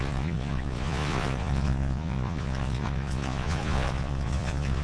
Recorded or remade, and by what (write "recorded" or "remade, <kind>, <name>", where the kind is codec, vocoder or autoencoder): remade, vocoder, Vocos